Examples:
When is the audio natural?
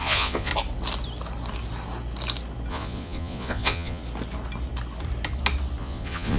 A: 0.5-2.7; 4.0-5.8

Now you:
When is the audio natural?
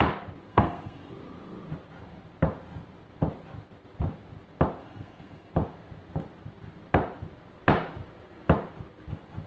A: 0.0-0.5; 1.1-4.8; 5.5-9.5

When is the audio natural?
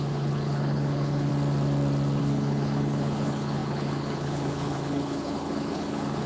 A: 1.3-2.2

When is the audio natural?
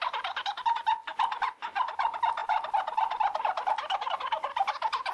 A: 0.0-5.1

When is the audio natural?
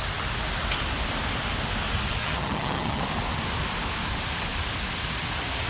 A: 0.0-2.2; 3.0-5.7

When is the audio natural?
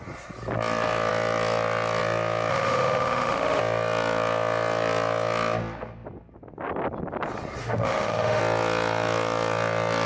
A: 0.0-2.5; 3.6-7.6; 8.4-10.1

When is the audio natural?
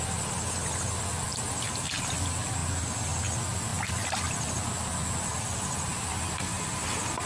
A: 0.0-7.3